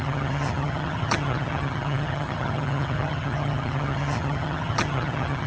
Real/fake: fake